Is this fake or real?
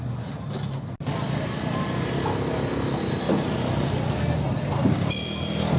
real